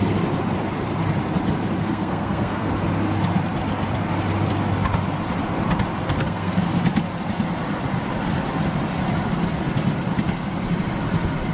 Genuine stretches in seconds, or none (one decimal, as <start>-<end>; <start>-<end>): 0.0-1.8; 2.7-6.0; 6.6-11.5